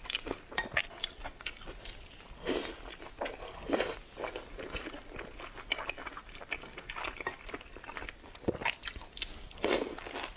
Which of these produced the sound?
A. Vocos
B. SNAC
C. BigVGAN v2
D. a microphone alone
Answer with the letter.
D